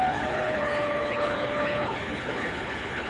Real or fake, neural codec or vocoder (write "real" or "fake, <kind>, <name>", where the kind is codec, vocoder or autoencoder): fake, codec, HILCodec